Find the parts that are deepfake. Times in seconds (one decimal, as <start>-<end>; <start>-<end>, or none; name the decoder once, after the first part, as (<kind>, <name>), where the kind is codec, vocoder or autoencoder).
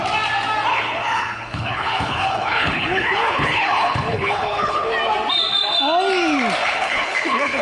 0.7-4.9 (codec, HILCodec); 6.6-7.6